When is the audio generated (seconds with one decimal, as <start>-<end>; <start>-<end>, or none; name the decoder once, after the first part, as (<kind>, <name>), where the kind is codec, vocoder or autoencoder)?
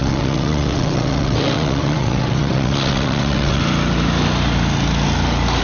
0.0-3.6 (vocoder, WaveNeXt)